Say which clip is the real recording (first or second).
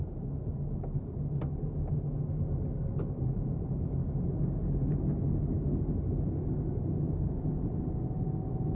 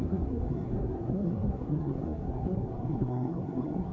first